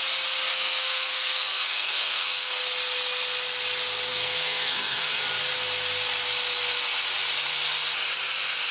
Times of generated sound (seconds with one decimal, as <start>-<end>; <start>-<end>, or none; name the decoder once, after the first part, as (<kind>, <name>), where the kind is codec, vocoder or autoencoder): 0.5-2.6 (codec, SNAC); 4.1-5.2